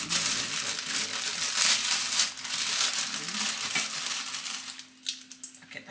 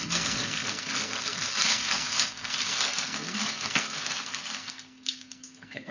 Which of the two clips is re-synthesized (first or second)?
second